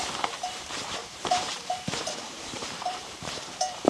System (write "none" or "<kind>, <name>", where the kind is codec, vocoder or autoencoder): vocoder, BigVGAN v2